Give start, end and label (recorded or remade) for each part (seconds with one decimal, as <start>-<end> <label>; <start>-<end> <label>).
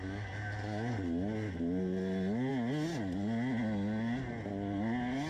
0.0-5.3 recorded